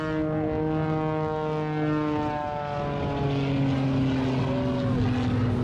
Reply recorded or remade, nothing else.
recorded